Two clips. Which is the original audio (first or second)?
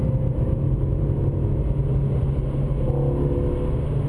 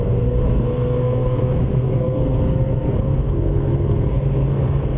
first